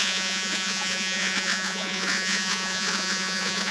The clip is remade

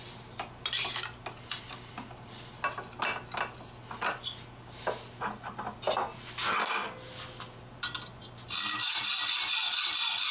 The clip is recorded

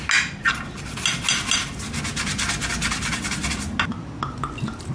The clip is recorded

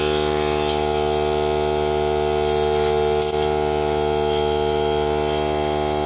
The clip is recorded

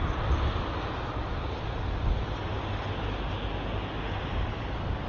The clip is recorded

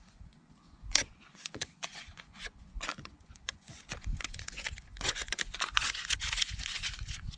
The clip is remade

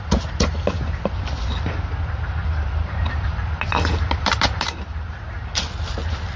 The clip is recorded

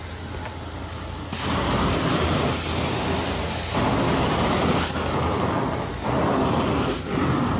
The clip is recorded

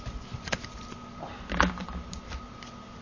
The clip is recorded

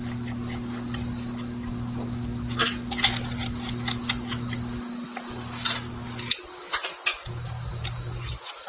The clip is recorded